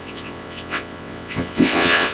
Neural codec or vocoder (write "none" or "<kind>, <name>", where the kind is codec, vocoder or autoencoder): vocoder, WaveNeXt